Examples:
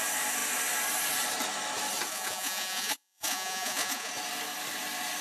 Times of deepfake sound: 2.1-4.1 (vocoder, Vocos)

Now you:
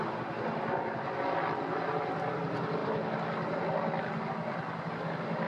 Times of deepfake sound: none

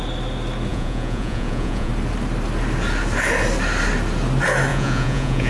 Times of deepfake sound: 0.7-1.9 (vocoder, Vocos); 4.7-5.5

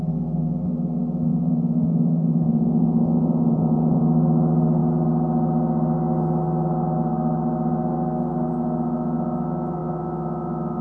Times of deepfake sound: 1.3-4.0 (vocoder, Vocos)

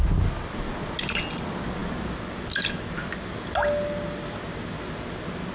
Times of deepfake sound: none